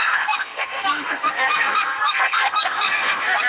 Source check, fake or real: fake